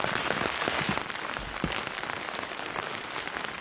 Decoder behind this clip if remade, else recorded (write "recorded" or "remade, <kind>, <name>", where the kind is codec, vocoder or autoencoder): recorded